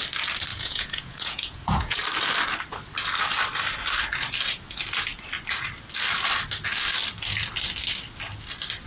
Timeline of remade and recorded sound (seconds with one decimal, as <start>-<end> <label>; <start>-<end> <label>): 0.0-0.5 recorded; 0.5-2.0 remade; 2.0-8.9 recorded